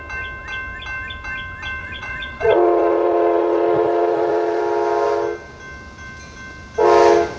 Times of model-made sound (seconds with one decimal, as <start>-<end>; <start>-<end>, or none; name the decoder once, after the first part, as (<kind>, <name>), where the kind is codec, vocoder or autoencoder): 1.8-4.6 (vocoder, Vocos)